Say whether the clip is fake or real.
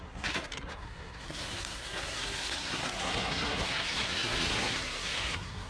fake